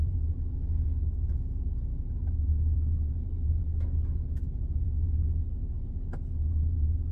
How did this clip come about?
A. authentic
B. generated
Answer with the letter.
B